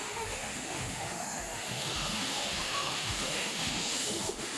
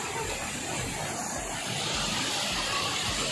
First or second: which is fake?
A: first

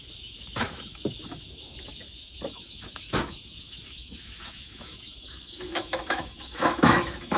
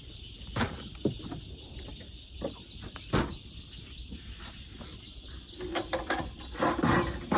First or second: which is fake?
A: first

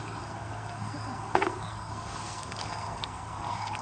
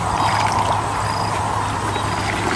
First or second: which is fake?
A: first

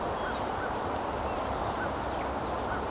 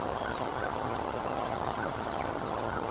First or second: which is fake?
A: second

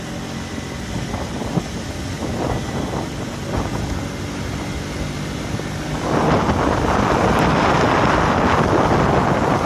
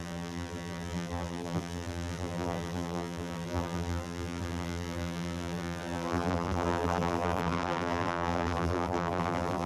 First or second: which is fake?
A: second